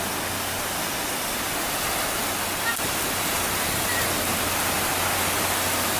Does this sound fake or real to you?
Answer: real